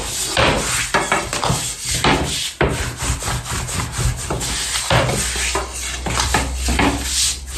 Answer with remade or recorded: recorded